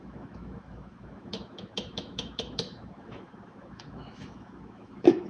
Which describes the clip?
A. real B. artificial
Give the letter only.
B